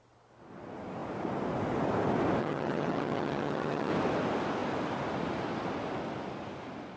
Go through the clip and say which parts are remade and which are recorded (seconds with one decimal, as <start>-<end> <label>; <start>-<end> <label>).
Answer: 0.0-2.4 recorded; 2.4-3.9 remade; 3.9-7.0 recorded